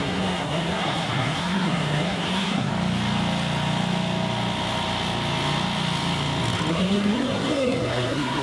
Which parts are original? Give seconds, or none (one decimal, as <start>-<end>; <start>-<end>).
2.7-6.7